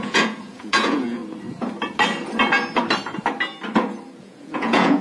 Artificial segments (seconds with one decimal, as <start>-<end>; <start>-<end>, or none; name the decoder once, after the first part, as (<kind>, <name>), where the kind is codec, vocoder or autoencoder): 0.0-1.2 (vocoder, Vocos); 4.2-5.0